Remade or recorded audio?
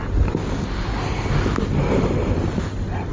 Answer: recorded